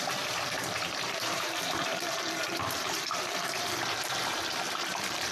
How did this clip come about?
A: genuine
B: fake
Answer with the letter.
B